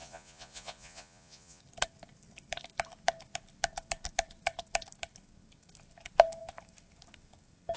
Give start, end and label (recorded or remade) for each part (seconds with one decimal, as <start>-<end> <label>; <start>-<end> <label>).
0.0-1.6 remade; 1.6-7.8 recorded